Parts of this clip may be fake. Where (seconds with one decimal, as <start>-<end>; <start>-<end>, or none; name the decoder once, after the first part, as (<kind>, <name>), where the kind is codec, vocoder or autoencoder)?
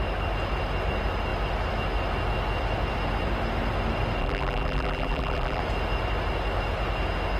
4.2-5.6 (vocoder, BigVGAN v2)